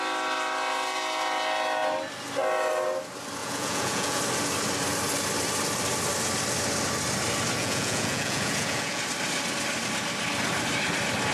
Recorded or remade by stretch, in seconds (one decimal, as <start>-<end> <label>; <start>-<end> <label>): 0.0-3.4 recorded; 3.4-4.2 remade; 4.2-7.6 recorded; 7.6-9.0 remade; 9.0-11.3 recorded